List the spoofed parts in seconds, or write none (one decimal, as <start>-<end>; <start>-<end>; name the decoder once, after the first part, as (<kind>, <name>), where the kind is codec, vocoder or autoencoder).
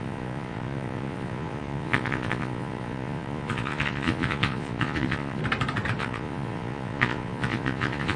0.0-5.4 (vocoder, Vocos); 6.0-8.2